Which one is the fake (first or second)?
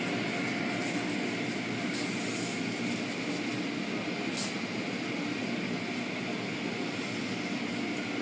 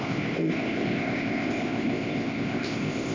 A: second